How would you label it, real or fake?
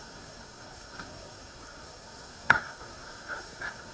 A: fake